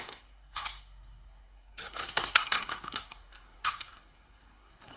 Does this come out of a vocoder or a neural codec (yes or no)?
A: yes